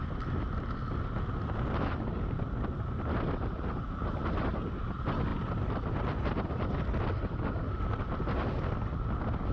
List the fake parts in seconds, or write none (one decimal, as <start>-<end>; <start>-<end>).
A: none